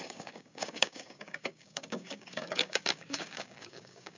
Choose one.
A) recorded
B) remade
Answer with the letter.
B